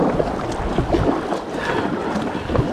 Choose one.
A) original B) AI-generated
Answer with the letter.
A